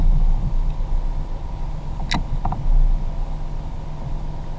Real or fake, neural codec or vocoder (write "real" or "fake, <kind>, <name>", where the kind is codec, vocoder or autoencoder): real